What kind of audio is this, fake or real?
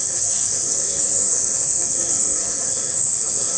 fake